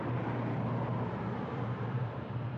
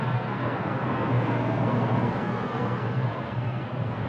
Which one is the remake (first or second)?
second